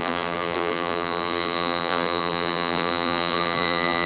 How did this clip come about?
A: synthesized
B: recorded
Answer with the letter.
A